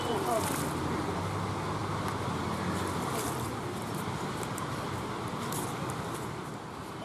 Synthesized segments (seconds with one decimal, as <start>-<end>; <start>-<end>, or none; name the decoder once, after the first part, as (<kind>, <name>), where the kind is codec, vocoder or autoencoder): none